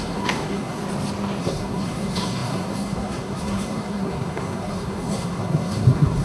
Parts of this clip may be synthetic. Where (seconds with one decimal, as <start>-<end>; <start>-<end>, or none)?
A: 0.0-0.8; 1.4-6.2